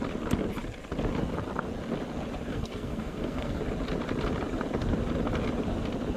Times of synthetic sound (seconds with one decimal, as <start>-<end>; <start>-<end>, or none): 2.5-3.6